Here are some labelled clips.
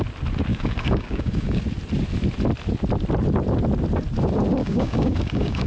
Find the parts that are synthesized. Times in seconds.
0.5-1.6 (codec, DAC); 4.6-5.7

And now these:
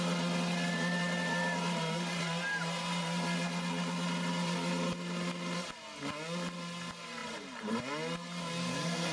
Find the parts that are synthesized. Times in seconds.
7.2-7.8 (vocoder, BigVGAN v2)

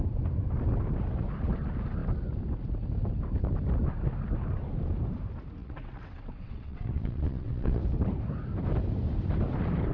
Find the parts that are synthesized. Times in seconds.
5.6-7.8 (vocoder, WaveNeXt)

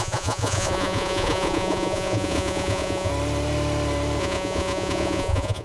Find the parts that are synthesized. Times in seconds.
0.0-3.1 (vocoder, Vocos); 4.2-5.6

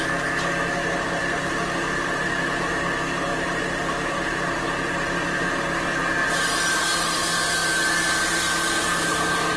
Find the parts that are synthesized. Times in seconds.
1.2-2.7 (vocoder, BigVGAN v2); 3.3-4.5

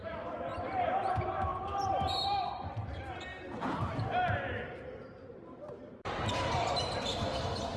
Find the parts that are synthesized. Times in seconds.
0.5-1.1 (vocoder, BigVGAN v2); 3.3-6.5

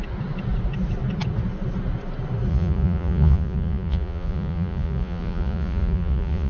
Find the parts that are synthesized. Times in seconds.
2.5-6.5 (vocoder, Vocos)